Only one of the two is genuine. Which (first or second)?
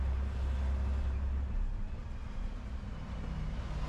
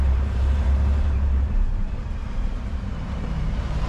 first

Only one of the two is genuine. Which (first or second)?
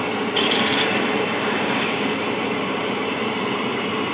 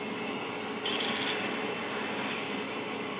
second